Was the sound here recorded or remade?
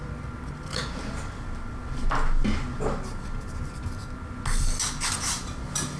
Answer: recorded